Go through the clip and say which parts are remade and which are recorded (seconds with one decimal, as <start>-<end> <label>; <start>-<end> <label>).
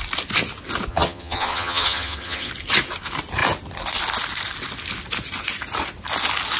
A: 0.0-0.9 recorded; 0.9-2.5 remade; 2.5-6.6 recorded